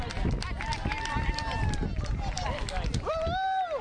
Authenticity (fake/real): real